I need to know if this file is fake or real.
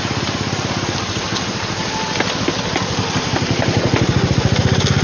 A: real